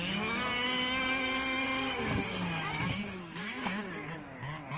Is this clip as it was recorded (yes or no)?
no